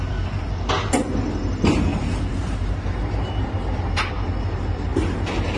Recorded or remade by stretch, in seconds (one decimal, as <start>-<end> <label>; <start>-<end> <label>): 0.0-1.9 recorded; 1.9-4.1 remade; 4.1-5.6 recorded